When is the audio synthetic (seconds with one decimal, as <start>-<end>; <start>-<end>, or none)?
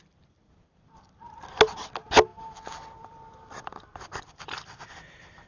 2.3-4.8